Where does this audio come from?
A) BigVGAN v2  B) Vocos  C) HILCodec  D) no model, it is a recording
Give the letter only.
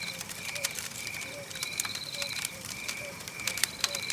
A